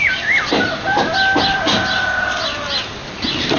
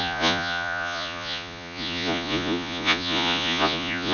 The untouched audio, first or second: first